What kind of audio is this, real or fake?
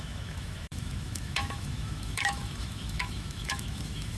fake